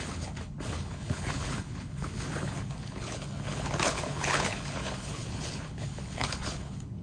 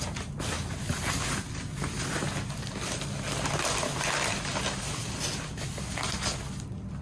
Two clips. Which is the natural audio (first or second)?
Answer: second